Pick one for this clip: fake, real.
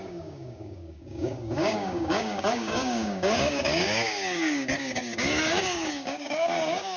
fake